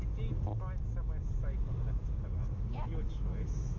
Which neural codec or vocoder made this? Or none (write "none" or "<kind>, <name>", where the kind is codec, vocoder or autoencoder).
none